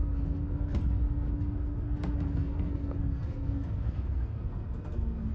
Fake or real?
fake